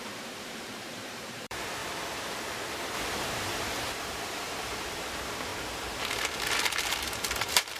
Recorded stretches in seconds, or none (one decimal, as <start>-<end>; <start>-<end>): 1.8-3.2; 5.5-6.8